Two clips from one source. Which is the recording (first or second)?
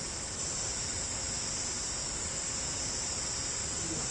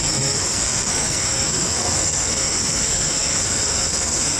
first